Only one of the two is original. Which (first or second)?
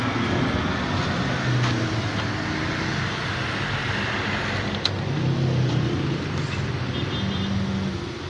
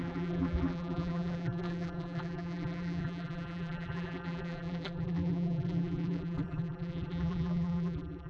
first